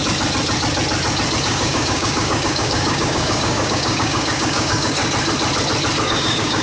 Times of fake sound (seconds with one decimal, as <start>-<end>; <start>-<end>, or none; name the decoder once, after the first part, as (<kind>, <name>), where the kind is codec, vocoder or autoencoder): 1.4-5.0 (codec, DAC); 6.0-6.6